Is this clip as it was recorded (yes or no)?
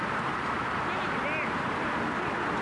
yes